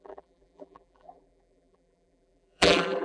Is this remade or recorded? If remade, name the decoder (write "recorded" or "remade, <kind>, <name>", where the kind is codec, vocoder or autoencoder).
remade, vocoder, BigVGAN v2